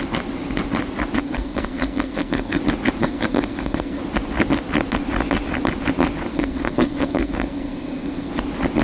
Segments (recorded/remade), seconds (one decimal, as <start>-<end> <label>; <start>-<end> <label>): 0.0-1.2 recorded; 1.2-2.6 remade; 2.6-3.0 recorded; 3.0-4.0 remade; 4.0-6.3 recorded; 6.3-8.3 remade; 8.3-8.8 recorded